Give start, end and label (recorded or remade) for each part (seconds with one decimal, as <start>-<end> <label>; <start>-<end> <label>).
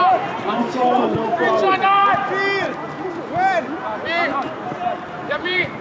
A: 0.0-2.0 remade; 2.0-5.1 recorded; 5.1-5.8 remade